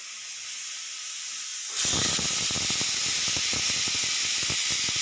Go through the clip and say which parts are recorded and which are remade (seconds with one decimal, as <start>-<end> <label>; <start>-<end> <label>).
0.0-5.0 recorded